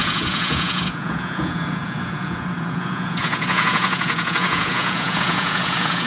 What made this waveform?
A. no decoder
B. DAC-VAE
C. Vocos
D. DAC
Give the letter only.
C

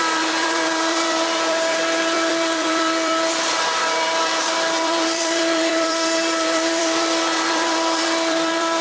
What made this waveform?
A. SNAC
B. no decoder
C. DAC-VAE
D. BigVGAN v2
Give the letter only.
D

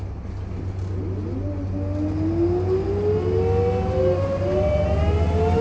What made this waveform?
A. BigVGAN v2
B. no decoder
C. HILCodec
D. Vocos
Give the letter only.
B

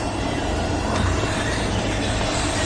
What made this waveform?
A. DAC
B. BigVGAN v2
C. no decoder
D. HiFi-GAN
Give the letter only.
B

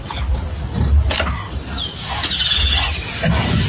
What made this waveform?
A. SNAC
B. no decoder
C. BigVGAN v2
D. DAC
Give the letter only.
B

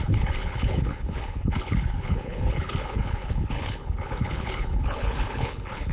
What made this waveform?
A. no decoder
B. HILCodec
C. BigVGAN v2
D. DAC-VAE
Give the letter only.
B